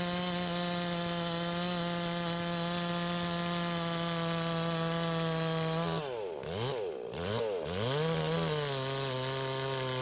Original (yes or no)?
yes